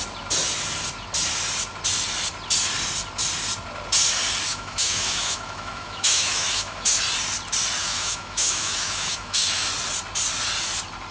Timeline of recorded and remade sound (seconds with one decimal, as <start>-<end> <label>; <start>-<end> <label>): 0.0-4.5 recorded; 4.5-7.0 remade; 7.0-7.8 recorded; 7.8-9.7 remade; 9.7-11.1 recorded